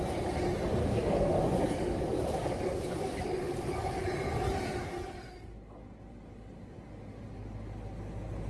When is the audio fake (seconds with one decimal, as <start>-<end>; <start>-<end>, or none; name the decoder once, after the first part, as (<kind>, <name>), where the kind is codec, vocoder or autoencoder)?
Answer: 0.8-1.4 (codec, SNAC)